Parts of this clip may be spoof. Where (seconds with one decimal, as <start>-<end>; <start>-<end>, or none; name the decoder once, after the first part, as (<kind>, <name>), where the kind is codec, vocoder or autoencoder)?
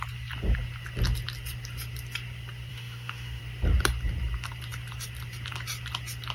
2.7-3.4 (autoencoder, DAC-VAE)